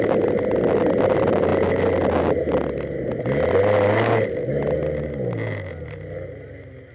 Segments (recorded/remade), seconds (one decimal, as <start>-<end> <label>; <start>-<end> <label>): 0.0-6.9 recorded